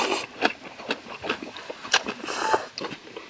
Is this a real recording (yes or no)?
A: yes